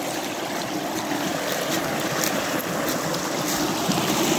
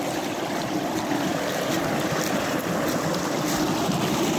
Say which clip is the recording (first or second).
first